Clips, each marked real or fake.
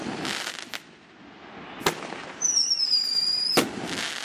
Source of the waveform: real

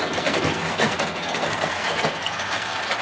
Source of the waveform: fake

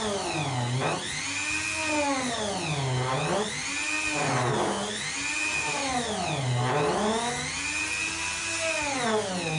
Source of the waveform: real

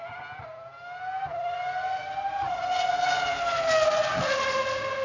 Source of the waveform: real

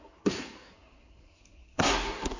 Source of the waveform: fake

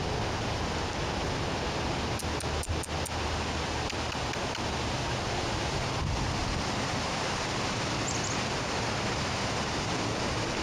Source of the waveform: real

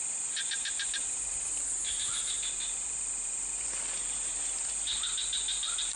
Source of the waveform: real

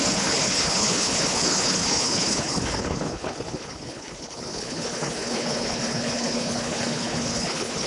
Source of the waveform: fake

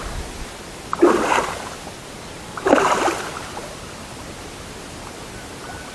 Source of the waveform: real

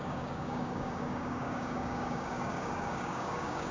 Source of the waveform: fake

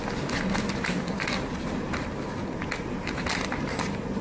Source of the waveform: real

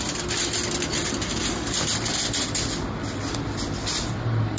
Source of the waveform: real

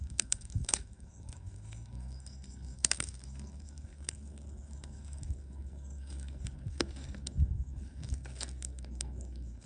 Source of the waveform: fake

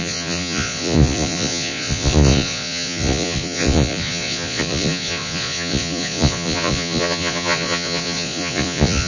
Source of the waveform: fake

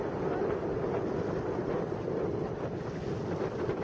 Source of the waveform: real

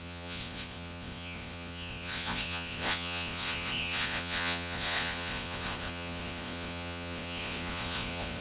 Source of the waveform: fake